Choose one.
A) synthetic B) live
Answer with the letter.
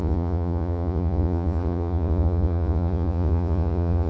A